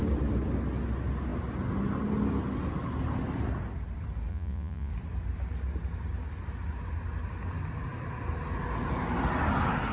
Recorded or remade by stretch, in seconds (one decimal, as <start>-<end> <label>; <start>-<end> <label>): 0.0-4.3 recorded; 4.3-4.9 remade; 4.9-9.9 recorded

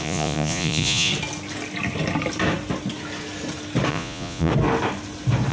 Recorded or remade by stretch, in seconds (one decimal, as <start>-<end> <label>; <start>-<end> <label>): 0.0-1.1 remade; 1.1-3.9 recorded; 3.9-4.5 remade; 4.5-5.5 recorded

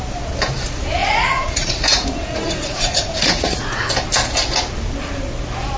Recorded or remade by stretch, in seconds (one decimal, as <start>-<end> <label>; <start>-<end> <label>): 0.0-1.0 recorded; 1.0-3.9 remade; 3.9-5.8 recorded

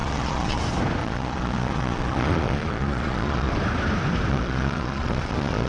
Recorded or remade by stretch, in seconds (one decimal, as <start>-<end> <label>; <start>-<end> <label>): 0.0-0.6 remade; 0.6-1.0 recorded; 1.0-3.5 remade; 3.5-4.3 recorded; 4.3-5.7 remade

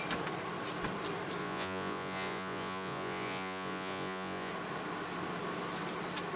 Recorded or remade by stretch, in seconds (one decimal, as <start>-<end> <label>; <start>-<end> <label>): 0.0-1.4 recorded; 1.4-4.5 remade; 4.5-6.4 recorded

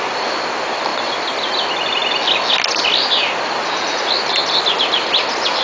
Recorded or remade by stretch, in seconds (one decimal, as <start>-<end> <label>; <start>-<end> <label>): 0.0-3.6 recorded; 3.6-4.1 remade; 4.1-5.6 recorded

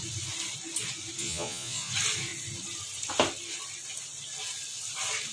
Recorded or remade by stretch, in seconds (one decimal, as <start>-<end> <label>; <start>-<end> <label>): 0.0-1.2 recorded; 1.2-1.9 remade; 1.9-5.3 recorded

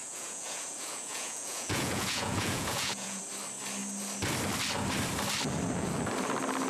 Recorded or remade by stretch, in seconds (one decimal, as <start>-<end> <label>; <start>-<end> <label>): 0.0-3.2 remade; 3.2-6.7 recorded